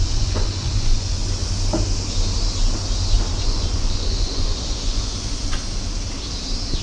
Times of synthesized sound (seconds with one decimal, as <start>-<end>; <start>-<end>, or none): 0.0-1.2; 3.3-5.6